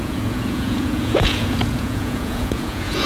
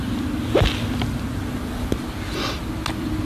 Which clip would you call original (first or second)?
second